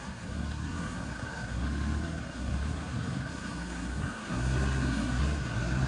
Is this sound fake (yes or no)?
yes